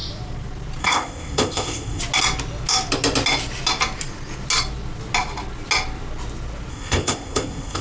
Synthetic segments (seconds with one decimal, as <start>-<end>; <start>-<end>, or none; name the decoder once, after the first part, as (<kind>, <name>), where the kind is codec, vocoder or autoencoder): 0.8-2.0 (codec, ZipCodec); 6.7-7.8